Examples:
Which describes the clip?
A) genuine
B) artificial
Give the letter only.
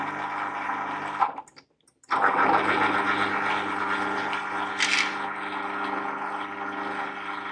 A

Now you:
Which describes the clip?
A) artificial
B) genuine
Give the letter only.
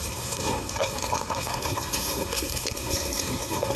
A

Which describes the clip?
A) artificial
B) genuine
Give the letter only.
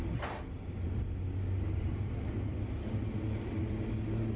B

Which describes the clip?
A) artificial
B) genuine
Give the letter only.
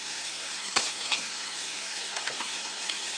A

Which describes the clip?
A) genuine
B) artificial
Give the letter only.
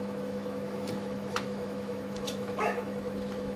B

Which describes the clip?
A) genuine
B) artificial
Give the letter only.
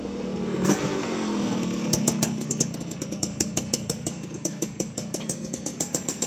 B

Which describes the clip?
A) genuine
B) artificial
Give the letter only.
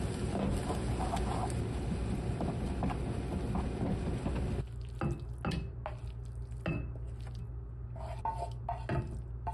A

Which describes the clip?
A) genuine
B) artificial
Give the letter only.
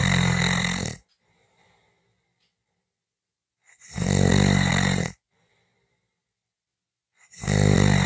A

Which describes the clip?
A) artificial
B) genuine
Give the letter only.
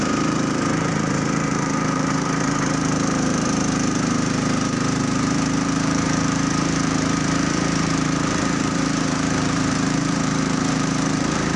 A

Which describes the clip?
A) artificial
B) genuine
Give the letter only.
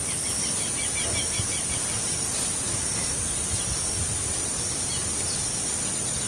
B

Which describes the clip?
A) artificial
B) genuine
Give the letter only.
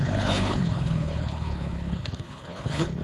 A